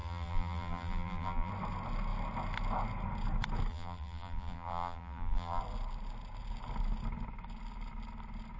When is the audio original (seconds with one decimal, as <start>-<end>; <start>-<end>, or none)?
1.5-3.7; 5.6-8.6